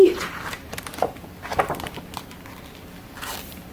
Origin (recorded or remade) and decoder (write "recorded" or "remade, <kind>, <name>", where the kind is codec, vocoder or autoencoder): recorded